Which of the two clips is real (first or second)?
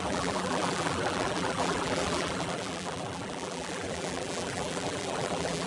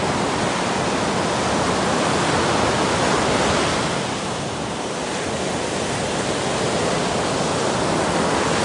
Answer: second